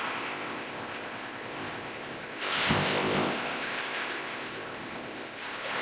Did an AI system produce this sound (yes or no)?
yes